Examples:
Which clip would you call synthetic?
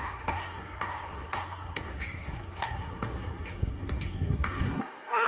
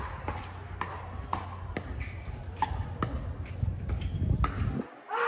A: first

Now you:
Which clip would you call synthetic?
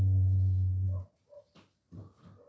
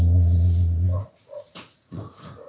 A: second